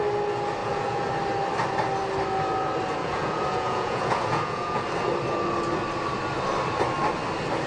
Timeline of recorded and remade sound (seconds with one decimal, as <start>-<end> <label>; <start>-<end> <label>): 0.0-0.6 recorded; 0.6-1.1 remade; 1.1-3.0 recorded; 3.0-4.8 remade; 4.8-7.7 recorded